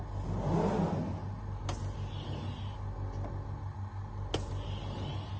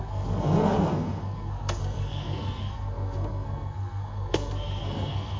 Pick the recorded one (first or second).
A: first